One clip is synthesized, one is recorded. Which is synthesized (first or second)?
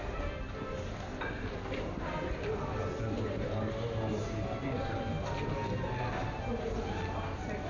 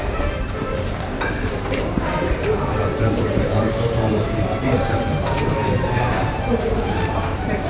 second